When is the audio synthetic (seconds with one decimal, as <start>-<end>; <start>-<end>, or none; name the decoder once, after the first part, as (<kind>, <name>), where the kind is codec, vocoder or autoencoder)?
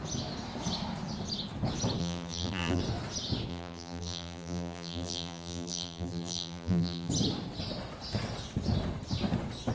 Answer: 2.0-2.8 (vocoder, BigVGAN v2); 3.5-7.1